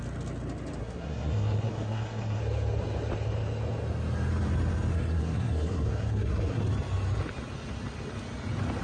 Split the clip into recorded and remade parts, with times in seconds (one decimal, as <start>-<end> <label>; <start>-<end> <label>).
0.0-0.8 recorded; 0.8-2.4 remade; 2.4-4.9 recorded; 4.9-6.6 remade; 6.6-8.8 recorded